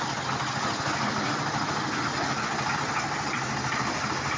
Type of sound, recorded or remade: recorded